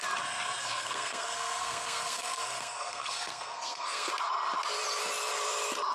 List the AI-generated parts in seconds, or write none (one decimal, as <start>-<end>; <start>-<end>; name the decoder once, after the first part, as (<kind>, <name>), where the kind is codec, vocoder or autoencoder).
0.6-4.1 (codec, SNAC)